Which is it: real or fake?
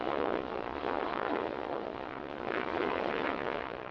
fake